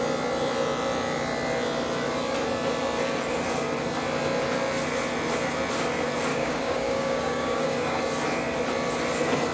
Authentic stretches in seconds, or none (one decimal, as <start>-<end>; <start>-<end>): 0.0-6.3; 8.0-9.5